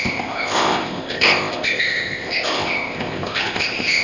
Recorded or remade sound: remade